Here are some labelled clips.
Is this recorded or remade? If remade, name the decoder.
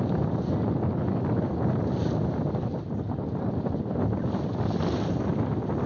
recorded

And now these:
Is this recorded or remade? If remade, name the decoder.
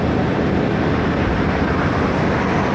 recorded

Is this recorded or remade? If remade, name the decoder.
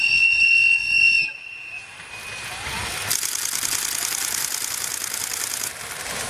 recorded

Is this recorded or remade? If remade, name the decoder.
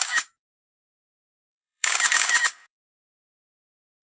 remade, codec, DAC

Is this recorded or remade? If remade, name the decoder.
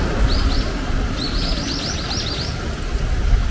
recorded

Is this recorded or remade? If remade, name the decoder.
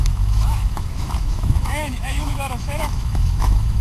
remade, autoencoder, DAC-VAE